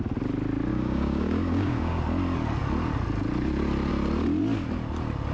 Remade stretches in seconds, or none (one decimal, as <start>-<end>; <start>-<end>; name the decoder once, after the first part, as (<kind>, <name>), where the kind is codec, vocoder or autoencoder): 0.7-2.0 (codec, DAC)